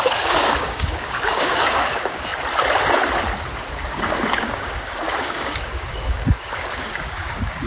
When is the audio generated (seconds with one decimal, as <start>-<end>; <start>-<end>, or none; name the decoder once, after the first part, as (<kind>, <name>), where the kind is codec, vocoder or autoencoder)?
0.0-2.3 (codec, DAC); 3.7-7.7